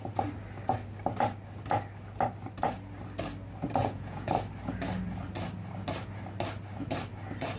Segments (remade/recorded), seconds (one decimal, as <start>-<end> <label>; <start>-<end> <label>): 0.0-3.8 recorded; 3.8-4.3 remade; 4.3-7.6 recorded